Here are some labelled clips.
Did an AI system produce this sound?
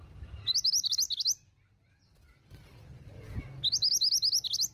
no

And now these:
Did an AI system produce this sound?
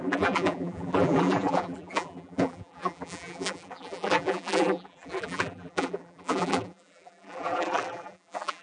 yes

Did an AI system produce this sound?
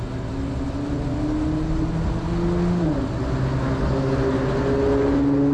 no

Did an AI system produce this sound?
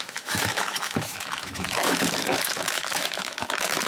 yes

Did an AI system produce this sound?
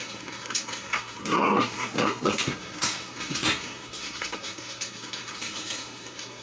yes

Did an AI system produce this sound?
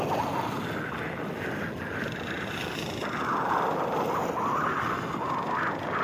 no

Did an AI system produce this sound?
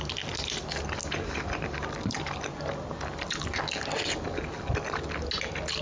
no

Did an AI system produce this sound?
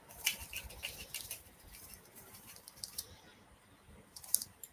yes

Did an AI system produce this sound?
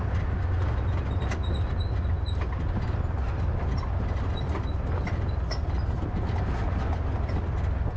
no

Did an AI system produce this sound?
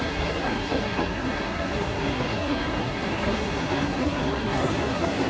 yes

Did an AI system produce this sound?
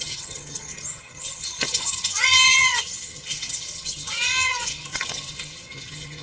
yes